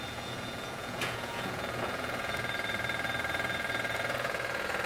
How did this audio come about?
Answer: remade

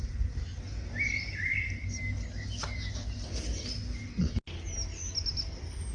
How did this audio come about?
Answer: recorded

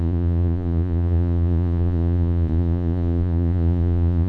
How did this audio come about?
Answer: remade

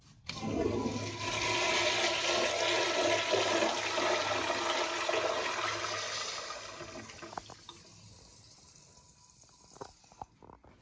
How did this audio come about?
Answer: recorded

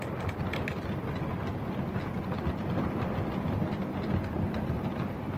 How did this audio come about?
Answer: recorded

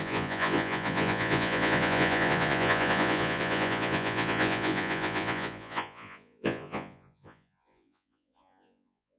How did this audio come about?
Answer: remade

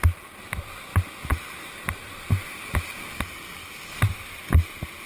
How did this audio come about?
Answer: recorded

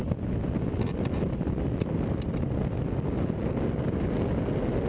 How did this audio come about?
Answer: recorded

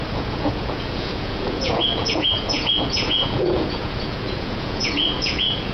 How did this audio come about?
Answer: remade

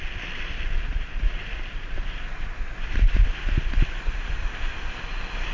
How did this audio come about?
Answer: recorded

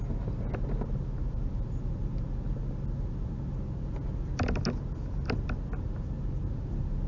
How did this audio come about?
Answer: recorded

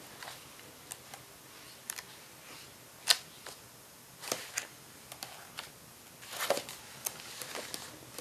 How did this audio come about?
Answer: recorded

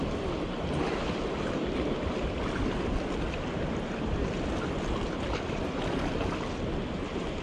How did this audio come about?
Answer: recorded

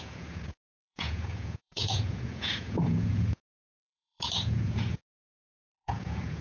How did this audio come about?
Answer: remade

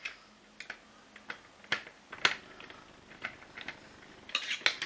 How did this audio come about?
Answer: recorded